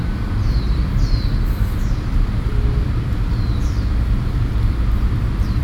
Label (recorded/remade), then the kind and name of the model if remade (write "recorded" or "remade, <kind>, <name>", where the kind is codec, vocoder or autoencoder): remade, vocoder, BigVGAN v2